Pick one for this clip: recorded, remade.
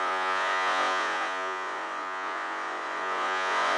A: remade